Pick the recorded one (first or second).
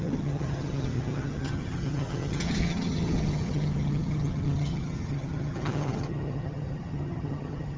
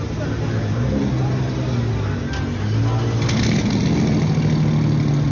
second